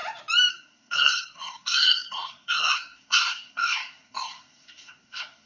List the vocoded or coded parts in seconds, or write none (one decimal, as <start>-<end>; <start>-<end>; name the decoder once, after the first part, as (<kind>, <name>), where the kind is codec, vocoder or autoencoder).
0.5-5.5 (codec, SNAC)

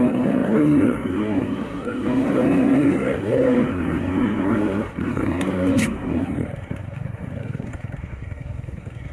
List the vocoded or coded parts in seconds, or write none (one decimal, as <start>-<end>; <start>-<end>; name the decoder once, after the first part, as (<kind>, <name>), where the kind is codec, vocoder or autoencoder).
0.0-9.1 (codec, SNAC)

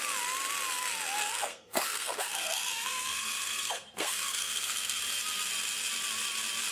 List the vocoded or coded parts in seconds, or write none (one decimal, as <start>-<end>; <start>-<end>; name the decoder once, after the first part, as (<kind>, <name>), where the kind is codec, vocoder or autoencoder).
1.2-5.0 (codec, SNAC)